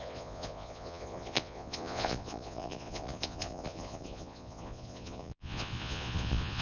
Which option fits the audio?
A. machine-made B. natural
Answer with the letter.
A